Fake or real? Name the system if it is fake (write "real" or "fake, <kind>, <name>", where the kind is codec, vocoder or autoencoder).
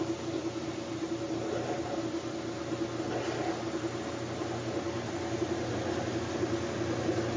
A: real